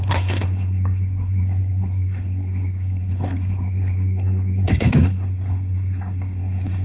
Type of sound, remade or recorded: remade